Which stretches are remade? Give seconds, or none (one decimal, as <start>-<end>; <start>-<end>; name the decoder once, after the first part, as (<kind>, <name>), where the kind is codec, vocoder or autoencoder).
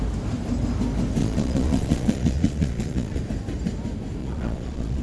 1.2-3.2 (vocoder, Vocos); 4.2-5.0